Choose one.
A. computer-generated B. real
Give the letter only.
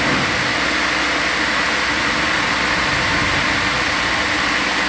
B